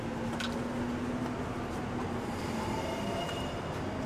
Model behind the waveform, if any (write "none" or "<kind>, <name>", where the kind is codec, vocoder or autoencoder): none